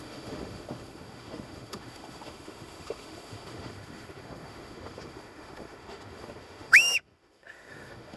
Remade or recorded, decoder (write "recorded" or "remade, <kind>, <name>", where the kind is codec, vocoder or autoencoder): remade, autoencoder, DAC-VAE